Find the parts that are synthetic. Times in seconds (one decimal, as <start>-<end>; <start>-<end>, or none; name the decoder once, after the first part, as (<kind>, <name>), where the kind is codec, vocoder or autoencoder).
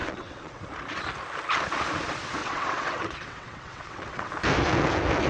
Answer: 0.0-0.6 (vocoder, WaveNeXt); 2.4-4.3